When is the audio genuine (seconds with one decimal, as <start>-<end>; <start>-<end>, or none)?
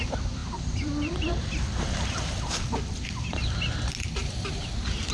0.0-0.4; 3.5-5.1